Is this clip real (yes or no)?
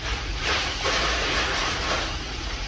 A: no